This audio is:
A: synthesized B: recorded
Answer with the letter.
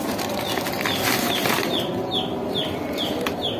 B